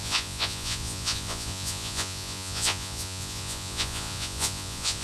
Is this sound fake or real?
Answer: fake